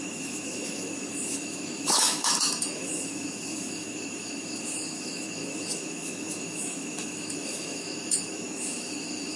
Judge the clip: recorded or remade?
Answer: remade